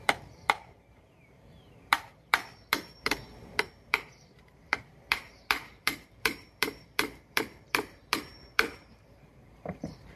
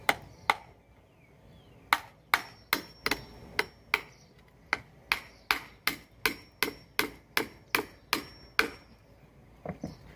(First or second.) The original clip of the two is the second